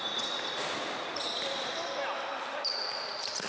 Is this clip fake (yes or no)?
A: yes